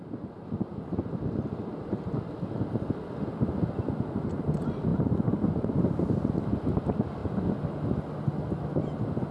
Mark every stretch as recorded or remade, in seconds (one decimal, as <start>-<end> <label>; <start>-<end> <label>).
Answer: 0.0-9.3 recorded